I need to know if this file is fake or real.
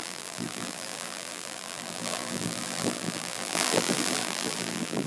fake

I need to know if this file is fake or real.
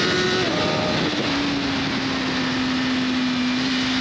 real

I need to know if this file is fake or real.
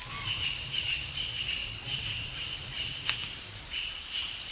fake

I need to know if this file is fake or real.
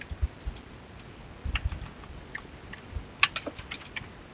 real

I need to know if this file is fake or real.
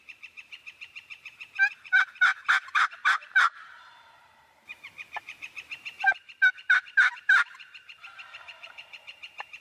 fake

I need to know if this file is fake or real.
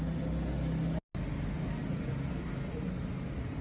real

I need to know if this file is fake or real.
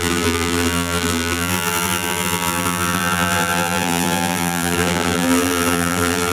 fake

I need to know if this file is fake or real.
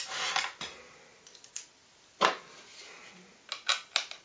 real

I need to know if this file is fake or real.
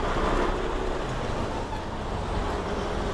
real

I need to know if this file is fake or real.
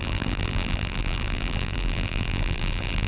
fake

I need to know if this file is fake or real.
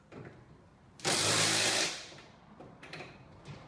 fake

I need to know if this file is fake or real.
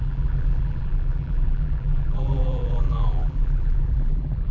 fake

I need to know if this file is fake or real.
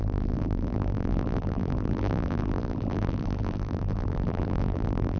fake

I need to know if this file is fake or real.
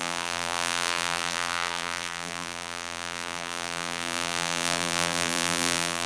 fake